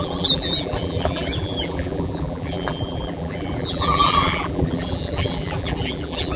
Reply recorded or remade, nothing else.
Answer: remade